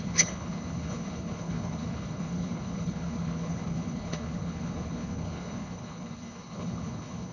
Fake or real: fake